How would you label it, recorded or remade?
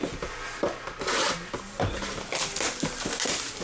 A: recorded